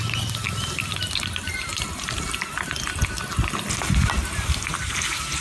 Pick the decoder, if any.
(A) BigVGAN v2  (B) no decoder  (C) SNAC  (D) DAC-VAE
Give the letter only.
B